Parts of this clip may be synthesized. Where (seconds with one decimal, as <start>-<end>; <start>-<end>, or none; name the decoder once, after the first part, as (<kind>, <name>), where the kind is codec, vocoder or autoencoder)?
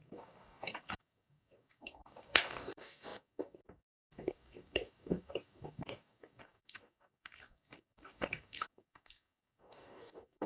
0.0-10.5 (codec, DAC)